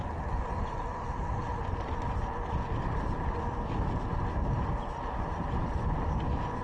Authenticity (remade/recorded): recorded